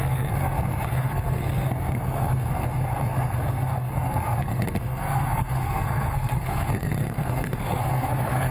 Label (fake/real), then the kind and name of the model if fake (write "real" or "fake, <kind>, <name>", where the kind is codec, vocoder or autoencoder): fake, codec, SNAC